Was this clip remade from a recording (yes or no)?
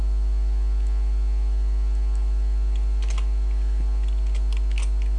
no